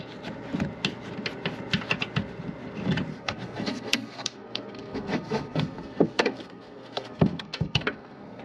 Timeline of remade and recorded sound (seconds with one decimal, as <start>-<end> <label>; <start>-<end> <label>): 0.0-3.1 recorded; 3.1-8.4 remade